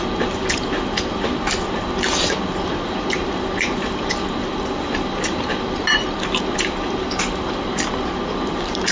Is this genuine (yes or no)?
no